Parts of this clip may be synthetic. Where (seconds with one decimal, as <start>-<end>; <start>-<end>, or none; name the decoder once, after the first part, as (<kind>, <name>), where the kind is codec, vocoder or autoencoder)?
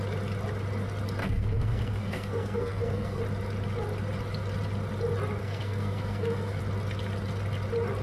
1.2-3.2 (codec, SNAC); 5.4-6.6